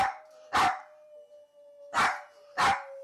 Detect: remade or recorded recorded